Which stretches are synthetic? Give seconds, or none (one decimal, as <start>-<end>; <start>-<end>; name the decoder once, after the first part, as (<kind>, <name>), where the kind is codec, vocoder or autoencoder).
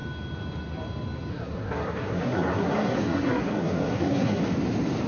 1.3-4.4 (codec, SNAC)